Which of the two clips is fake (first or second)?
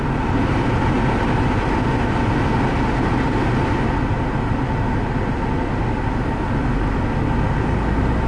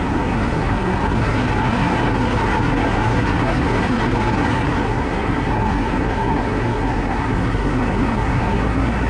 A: second